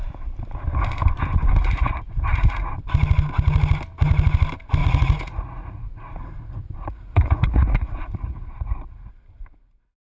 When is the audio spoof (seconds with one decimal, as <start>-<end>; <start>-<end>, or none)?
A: 1.6-2.7; 4.8-9.1